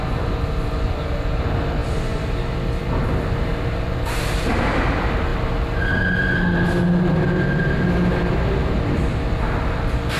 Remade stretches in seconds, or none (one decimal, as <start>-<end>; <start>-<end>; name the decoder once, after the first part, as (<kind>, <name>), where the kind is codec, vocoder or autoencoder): none